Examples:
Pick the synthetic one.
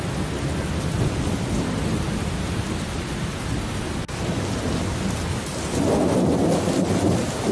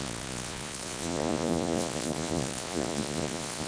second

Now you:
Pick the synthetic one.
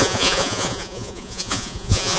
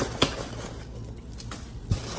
first